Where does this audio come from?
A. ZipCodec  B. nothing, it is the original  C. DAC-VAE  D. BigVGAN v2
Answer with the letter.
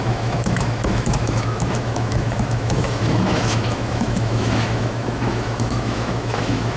C